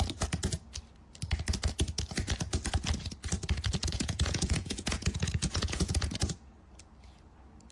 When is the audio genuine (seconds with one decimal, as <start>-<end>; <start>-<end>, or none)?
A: 0.0-3.8; 6.1-7.7